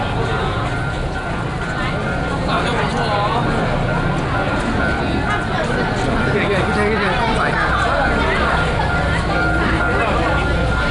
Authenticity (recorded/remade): recorded